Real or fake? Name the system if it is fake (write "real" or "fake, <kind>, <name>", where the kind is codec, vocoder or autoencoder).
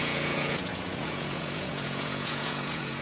fake, vocoder, Vocos